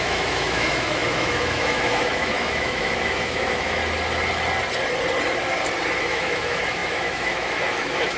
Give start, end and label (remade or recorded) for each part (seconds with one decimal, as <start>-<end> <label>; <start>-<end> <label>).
0.0-3.8 remade; 3.8-6.0 recorded; 6.0-8.2 remade